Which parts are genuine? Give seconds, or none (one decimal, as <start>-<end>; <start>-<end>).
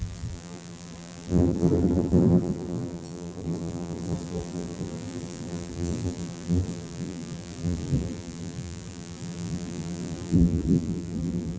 none